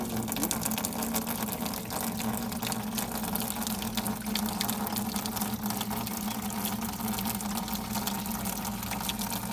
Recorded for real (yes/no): yes